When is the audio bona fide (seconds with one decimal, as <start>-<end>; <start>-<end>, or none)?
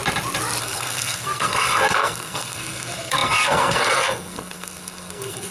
0.0-0.6